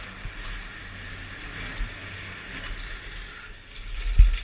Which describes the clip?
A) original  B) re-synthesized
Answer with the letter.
A